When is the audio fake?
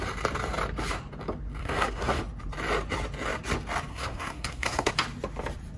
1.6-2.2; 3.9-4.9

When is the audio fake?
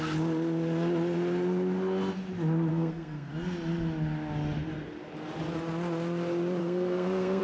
2.7-3.3; 6.6-7.4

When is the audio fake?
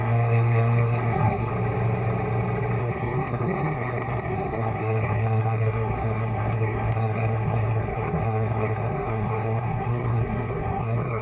0.0-1.5; 2.8-11.2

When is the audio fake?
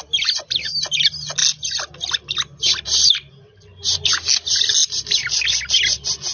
none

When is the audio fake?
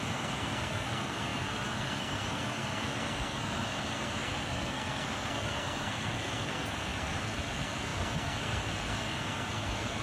0.0-10.0